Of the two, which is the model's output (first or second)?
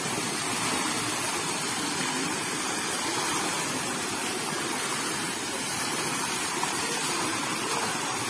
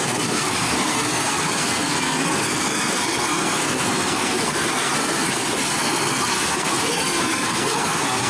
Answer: second